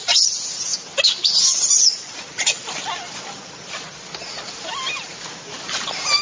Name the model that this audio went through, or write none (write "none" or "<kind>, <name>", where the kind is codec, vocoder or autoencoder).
none